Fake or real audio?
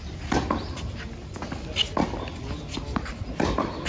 real